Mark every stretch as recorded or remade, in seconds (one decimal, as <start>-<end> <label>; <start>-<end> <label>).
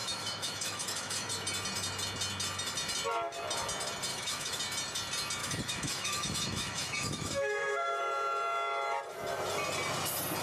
0.0-1.3 remade; 1.3-4.1 recorded; 4.1-4.6 remade; 4.6-5.4 recorded; 5.4-8.0 remade; 8.0-10.4 recorded